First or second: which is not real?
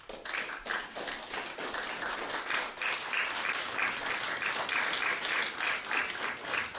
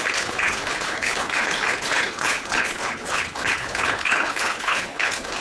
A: second